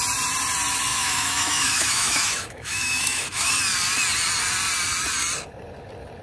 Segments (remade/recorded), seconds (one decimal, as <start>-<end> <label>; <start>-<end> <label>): 0.0-0.9 recorded; 0.9-3.5 remade; 3.5-6.2 recorded